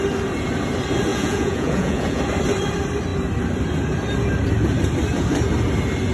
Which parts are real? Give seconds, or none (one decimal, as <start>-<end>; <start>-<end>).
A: 0.0-1.1; 2.2-6.1

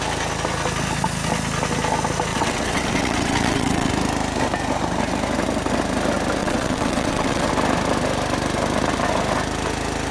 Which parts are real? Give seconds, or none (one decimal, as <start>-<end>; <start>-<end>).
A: 0.0-2.3; 3.9-6.4; 7.5-10.1

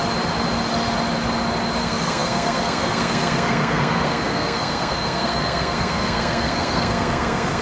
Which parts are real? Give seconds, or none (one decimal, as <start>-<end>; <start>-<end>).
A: 0.0-1.8

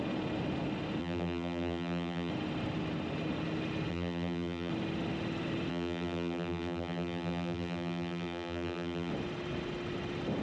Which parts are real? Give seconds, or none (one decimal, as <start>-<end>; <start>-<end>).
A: 0.0-1.0; 2.3-3.9; 4.7-5.7; 9.1-10.4